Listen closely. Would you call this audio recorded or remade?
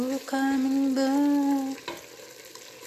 recorded